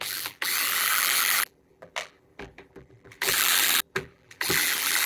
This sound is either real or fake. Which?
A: fake